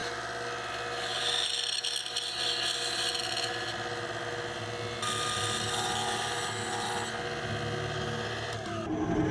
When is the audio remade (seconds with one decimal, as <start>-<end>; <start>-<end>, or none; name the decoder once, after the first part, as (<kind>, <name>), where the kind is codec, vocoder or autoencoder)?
none